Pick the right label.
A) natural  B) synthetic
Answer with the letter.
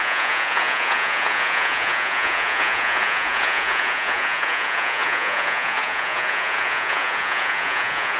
B